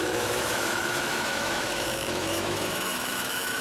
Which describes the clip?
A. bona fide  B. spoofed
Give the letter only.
B